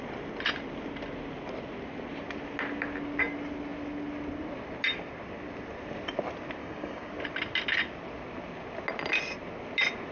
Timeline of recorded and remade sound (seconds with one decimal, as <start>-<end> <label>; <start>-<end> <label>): 0.0-6.6 recorded; 6.6-7.1 remade; 7.1-10.1 recorded